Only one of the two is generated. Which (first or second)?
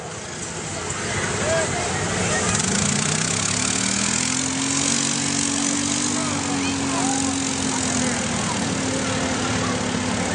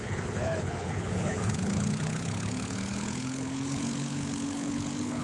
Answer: second